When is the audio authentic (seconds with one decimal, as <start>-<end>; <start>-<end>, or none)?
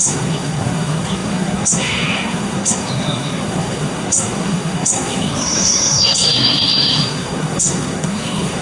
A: none